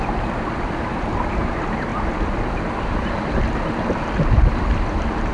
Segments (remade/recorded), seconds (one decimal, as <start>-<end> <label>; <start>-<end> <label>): 0.0-5.3 recorded